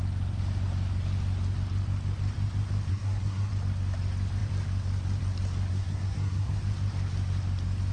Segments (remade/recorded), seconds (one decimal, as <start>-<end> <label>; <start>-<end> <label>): 0.0-2.9 recorded; 2.9-3.5 remade; 3.5-5.7 recorded; 5.7-6.6 remade; 6.6-7.9 recorded